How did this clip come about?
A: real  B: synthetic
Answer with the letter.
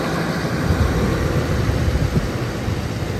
A